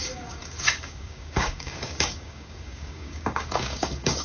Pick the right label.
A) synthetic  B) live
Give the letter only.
A